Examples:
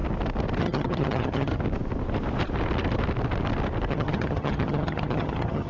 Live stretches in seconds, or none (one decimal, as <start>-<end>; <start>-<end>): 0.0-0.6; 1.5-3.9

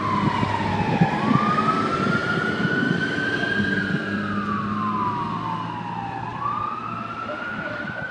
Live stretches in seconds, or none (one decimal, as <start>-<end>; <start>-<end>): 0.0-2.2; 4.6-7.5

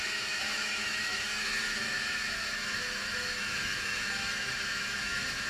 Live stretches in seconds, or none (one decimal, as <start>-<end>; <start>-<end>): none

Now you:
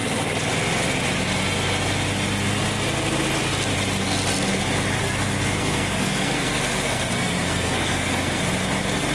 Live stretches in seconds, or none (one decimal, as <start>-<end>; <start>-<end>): 0.0-5.0; 8.4-9.1

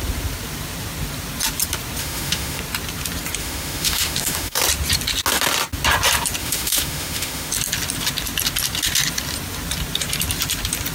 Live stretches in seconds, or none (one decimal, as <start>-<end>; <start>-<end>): 0.0-2.0; 2.6-3.4; 4.6-6.4; 7.5-10.9

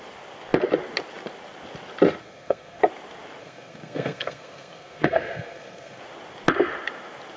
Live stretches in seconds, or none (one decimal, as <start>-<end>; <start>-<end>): 0.0-2.2; 2.8-3.4; 6.0-7.4